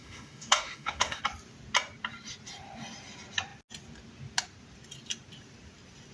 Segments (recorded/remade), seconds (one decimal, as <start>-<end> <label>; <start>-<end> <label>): 0.0-1.2 remade; 1.2-6.1 recorded